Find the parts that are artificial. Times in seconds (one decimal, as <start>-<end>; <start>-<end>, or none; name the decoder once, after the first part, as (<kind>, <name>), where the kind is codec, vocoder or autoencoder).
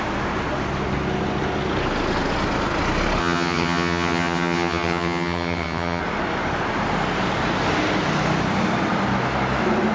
3.2-6.0 (vocoder, HiFi-GAN)